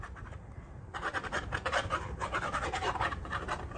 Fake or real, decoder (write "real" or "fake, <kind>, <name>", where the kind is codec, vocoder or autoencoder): fake, vocoder, BigVGAN v2